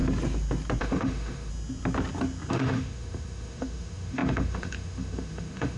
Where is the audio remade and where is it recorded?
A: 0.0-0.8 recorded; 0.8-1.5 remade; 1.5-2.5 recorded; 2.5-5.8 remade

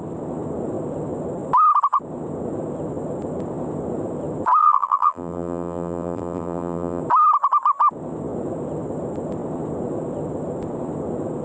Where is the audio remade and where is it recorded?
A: 0.0-4.6 recorded; 4.6-7.0 remade; 7.0-11.4 recorded

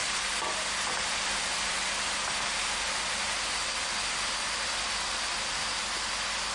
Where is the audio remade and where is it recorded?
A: 0.0-6.5 recorded